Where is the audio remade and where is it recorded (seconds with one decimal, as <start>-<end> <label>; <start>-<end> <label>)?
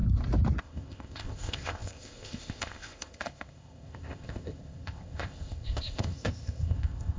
0.0-0.6 recorded; 0.6-7.2 remade